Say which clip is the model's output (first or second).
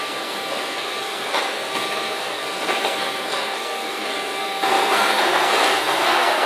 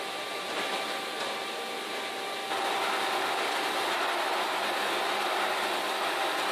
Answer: first